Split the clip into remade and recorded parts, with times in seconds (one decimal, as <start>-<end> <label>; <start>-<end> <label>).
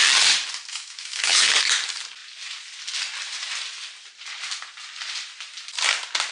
0.0-0.7 recorded; 0.7-1.5 remade; 1.5-6.3 recorded